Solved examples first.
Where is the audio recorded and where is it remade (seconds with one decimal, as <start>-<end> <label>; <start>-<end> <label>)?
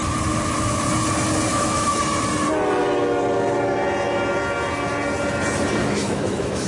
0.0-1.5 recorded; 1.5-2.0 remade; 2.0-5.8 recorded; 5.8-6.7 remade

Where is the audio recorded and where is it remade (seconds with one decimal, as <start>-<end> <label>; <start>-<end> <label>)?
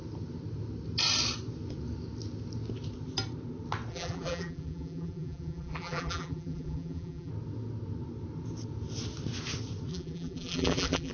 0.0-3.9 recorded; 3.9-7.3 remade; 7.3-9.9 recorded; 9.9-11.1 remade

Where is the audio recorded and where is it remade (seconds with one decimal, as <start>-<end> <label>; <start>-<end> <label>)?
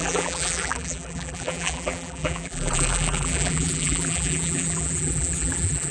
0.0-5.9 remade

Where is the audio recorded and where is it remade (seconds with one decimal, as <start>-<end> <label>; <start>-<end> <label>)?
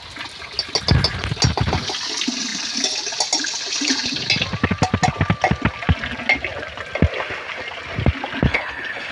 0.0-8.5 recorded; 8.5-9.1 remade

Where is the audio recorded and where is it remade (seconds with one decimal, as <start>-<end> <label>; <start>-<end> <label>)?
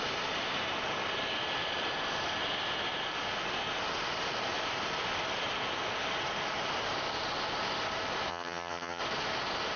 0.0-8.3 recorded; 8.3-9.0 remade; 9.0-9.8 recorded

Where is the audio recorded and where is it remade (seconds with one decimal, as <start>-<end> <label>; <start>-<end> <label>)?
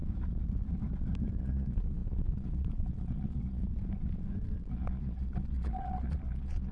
0.0-1.4 recorded; 1.4-3.6 remade; 3.6-4.7 recorded; 4.7-6.7 remade